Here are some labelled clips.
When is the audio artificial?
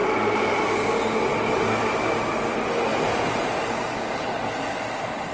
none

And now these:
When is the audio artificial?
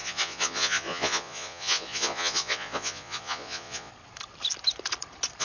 0.0-3.9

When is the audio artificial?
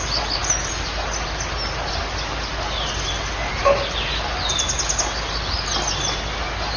none